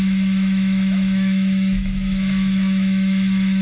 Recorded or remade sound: remade